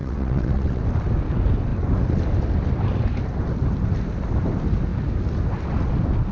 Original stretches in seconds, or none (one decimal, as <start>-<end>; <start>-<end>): 0.8-6.3